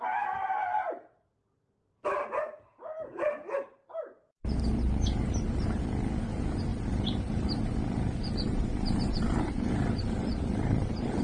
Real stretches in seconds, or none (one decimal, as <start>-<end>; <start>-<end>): 0.0-0.6; 2.4-6.7